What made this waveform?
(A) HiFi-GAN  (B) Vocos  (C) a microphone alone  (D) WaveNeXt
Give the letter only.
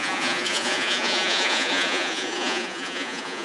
B